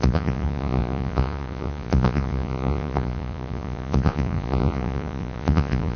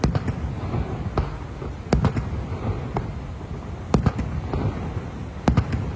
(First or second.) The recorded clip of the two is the second